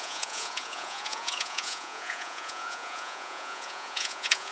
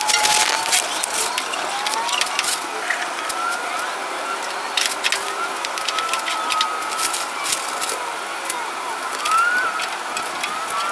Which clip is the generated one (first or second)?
first